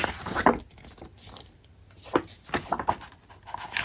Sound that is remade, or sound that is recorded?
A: recorded